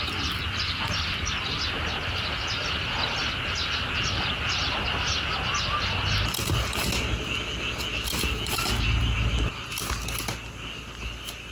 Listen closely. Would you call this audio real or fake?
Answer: real